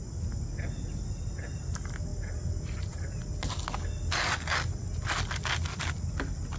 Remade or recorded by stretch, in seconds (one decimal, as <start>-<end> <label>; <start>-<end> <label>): 0.0-6.6 recorded